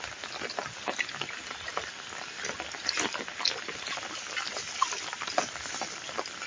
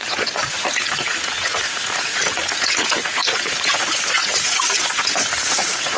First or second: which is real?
first